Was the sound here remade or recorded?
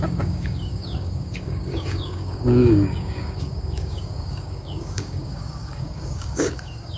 remade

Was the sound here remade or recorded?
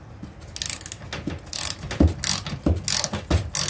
recorded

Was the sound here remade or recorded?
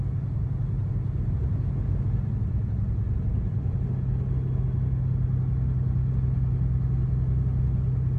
recorded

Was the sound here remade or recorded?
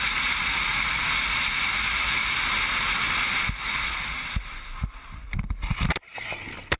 recorded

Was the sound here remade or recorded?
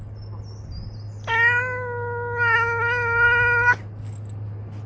recorded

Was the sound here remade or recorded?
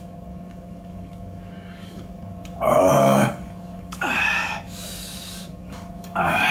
remade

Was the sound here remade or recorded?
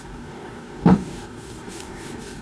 remade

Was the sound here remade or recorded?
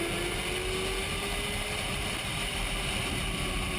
recorded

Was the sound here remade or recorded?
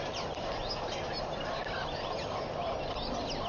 recorded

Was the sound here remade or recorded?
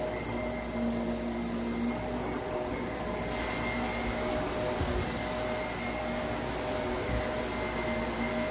recorded